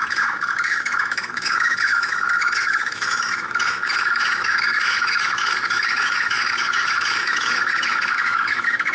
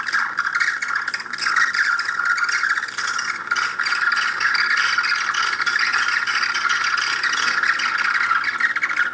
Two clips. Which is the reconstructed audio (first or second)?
first